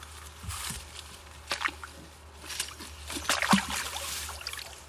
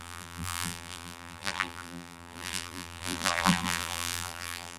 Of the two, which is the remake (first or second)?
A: second